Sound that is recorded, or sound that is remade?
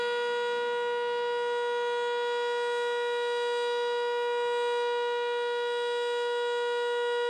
recorded